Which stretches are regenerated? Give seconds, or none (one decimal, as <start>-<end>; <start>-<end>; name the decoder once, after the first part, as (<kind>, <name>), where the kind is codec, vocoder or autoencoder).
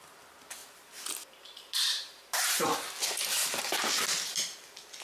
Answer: none